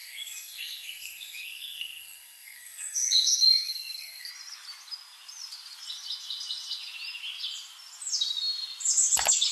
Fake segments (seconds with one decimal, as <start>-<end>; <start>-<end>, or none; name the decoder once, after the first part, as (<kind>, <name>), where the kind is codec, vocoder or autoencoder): 0.0-4.3 (codec, SNAC)